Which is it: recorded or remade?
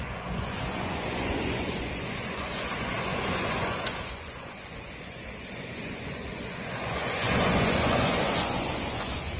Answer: remade